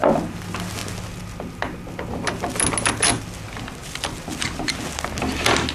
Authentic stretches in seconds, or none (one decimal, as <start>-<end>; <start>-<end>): 0.0-3.8; 4.8-5.7